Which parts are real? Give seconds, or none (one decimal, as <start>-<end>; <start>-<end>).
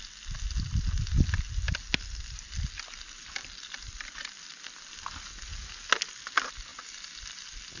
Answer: 0.0-3.4; 4.9-7.8